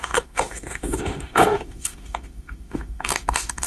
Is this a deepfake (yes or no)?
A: yes